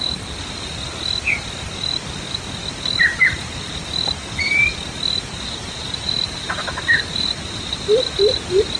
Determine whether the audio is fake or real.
real